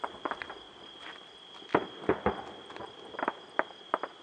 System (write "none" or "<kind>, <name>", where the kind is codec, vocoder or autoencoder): none